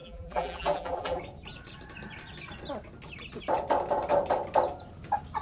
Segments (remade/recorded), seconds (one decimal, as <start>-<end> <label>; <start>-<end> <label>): 0.0-1.2 remade; 1.2-5.4 recorded